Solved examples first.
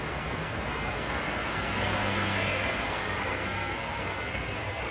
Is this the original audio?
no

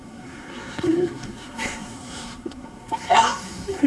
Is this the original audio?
no